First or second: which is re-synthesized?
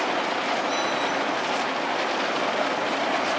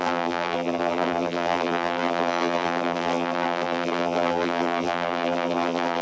second